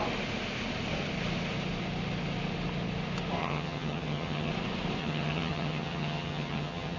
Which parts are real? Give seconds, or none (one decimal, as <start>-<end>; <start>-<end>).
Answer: 0.0-3.4; 4.5-5.0